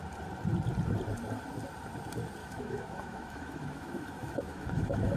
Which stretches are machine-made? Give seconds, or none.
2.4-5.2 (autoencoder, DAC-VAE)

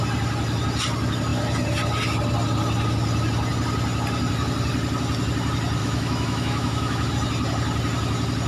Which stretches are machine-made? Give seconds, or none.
5.8-7.1 (autoencoder, DAC-VAE)

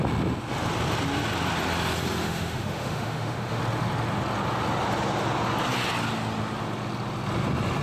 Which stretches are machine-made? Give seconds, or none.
2.2-3.6 (autoencoder, DAC-VAE)